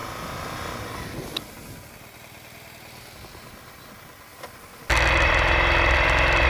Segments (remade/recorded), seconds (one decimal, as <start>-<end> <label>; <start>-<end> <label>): 0.0-6.5 recorded